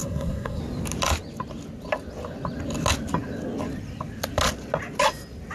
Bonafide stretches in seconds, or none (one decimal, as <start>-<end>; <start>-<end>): 0.6-5.5